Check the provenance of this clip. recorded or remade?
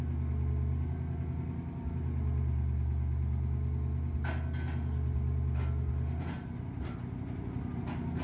recorded